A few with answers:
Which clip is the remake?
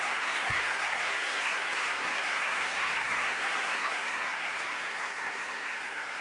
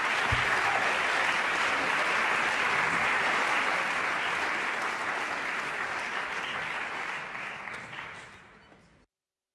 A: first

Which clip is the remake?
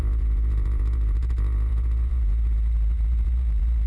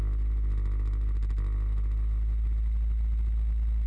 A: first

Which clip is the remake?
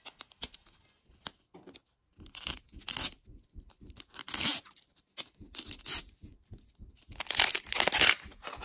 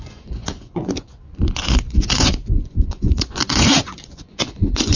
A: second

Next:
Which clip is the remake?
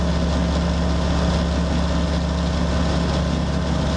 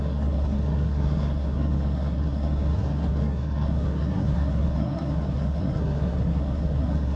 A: second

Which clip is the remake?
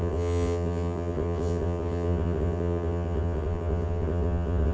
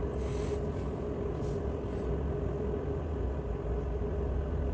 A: first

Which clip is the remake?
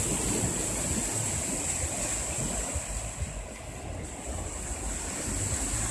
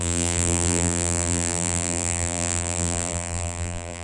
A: second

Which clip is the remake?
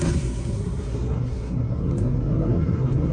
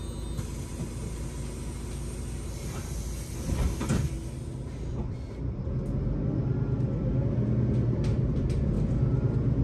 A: first